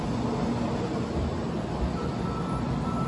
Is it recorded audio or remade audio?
recorded